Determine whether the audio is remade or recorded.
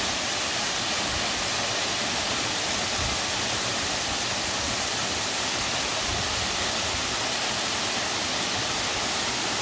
recorded